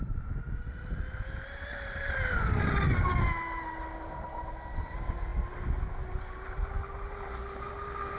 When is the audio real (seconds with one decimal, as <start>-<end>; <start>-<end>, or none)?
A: 0.0-8.2